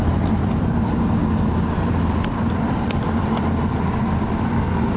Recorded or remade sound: remade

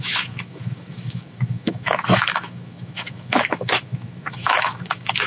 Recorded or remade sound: remade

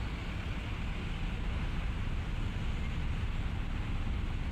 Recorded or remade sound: recorded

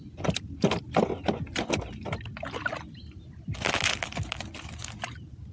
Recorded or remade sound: recorded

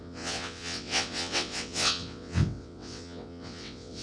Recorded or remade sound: remade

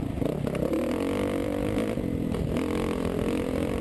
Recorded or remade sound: recorded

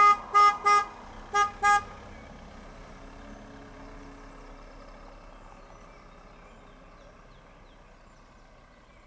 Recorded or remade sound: recorded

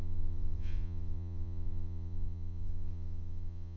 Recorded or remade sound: remade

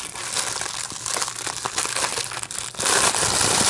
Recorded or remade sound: recorded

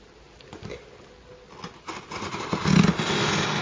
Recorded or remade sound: recorded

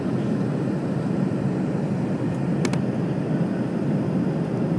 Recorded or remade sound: remade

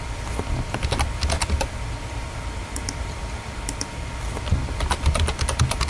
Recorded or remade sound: recorded